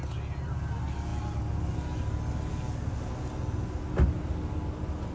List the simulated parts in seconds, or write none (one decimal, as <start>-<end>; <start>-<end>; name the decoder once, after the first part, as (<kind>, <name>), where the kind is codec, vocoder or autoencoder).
none